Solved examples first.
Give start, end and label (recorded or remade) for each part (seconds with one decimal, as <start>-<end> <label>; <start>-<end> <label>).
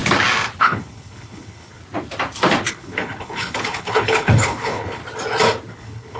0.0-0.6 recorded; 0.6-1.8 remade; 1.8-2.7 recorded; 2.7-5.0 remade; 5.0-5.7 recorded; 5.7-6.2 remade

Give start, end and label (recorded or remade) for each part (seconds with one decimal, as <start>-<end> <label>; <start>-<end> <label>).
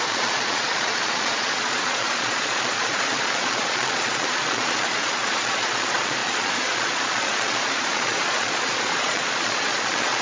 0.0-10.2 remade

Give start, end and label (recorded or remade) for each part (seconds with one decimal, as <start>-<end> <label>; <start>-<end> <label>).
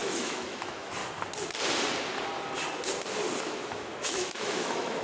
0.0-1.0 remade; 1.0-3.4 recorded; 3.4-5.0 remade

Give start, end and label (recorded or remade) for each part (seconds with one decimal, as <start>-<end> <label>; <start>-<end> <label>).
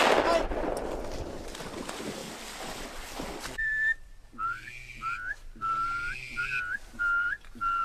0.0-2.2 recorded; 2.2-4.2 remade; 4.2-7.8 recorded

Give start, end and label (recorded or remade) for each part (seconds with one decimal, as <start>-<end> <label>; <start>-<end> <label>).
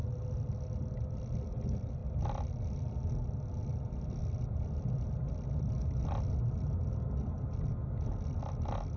0.0-9.0 recorded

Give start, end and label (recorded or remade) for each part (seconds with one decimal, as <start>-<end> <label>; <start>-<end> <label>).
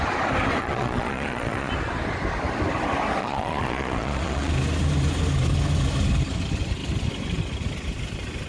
0.0-0.6 recorded; 0.6-1.7 remade; 1.7-3.2 recorded; 3.2-4.5 remade; 4.5-8.5 recorded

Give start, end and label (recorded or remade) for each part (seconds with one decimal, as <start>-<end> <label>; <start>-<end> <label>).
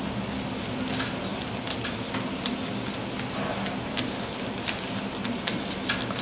0.0-6.2 recorded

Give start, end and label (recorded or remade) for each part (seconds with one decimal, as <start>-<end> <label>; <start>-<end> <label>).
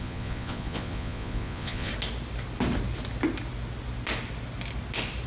0.0-1.9 remade; 1.9-5.3 recorded